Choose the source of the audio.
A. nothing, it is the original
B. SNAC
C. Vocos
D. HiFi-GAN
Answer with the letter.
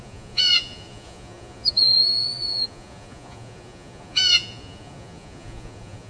C